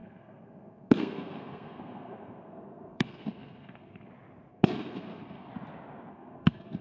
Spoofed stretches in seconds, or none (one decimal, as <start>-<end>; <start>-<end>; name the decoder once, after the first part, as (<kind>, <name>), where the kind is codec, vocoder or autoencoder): 0.0-4.1 (codec, SNAC); 4.5-5.5; 6.1-6.8